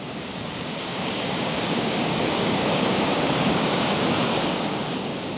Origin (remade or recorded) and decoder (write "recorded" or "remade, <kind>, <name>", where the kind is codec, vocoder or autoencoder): remade, codec, DAC